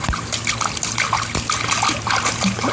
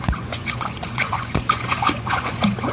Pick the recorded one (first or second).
first